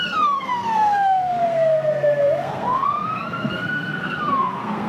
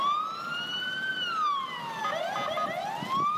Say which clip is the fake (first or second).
first